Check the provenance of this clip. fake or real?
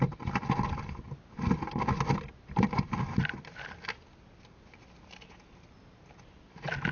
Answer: real